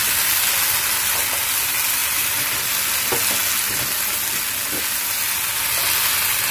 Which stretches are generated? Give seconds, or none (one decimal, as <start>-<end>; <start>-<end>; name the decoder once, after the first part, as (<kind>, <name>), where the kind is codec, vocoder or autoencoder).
none